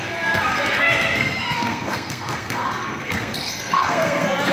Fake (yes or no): yes